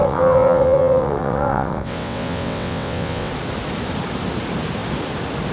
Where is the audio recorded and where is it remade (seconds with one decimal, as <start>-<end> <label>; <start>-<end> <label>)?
0.0-3.3 remade; 3.3-5.5 recorded